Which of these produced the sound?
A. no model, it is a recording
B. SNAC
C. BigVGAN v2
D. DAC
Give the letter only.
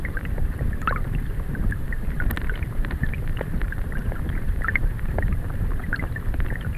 C